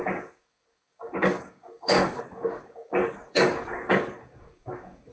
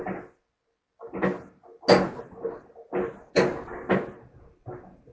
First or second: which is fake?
first